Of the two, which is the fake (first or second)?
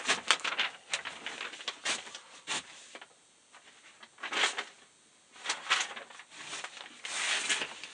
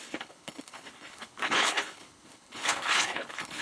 second